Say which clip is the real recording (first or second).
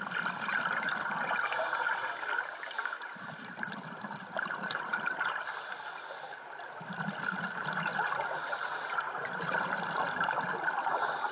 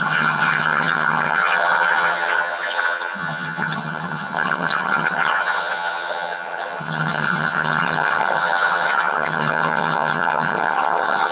first